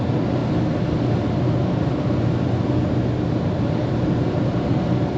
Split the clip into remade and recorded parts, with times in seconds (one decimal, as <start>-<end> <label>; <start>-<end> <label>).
0.0-5.2 recorded